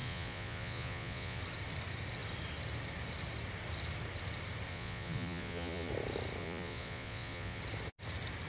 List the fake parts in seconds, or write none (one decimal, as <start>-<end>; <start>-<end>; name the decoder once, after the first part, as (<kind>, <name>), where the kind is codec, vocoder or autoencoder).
0.0-1.4 (vocoder, Vocos); 4.7-5.9; 6.4-7.6